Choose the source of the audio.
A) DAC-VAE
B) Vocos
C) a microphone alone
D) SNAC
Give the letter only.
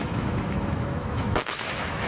A